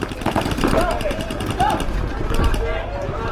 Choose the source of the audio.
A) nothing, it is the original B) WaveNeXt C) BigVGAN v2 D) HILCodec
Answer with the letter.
A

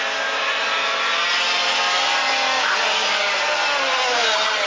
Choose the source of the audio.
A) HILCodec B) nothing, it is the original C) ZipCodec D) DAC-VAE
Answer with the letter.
B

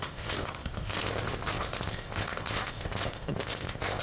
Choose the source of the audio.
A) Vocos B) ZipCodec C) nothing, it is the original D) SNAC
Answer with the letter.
B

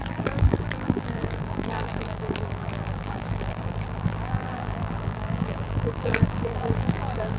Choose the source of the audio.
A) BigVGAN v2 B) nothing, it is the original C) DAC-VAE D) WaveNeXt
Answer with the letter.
A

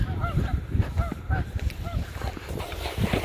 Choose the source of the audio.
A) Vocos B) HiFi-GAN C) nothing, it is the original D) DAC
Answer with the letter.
C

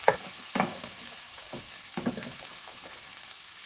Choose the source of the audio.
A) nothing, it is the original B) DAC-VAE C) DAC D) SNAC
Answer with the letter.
B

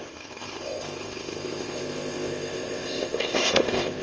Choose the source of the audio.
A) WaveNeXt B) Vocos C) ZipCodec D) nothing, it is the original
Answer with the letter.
C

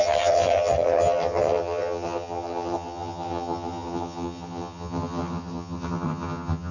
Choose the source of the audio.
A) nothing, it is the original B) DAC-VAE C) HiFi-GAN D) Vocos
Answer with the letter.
C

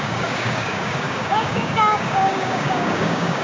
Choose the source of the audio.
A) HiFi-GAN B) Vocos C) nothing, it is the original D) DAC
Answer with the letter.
D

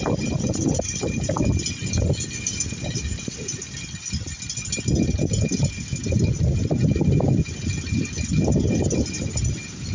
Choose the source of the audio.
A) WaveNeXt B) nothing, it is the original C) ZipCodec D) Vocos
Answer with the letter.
B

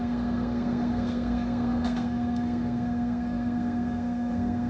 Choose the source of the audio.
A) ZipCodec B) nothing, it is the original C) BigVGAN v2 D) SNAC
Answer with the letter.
D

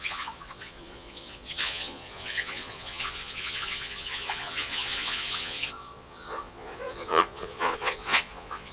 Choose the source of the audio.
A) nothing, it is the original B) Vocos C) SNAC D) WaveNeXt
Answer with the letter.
B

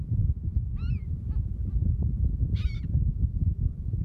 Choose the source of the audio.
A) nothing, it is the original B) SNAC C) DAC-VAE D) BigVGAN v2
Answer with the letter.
A